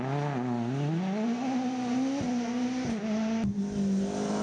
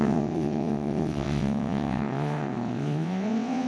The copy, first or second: second